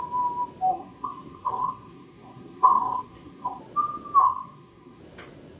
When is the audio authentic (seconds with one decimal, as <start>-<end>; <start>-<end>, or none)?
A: 0.0-0.7; 3.6-4.2; 5.0-5.6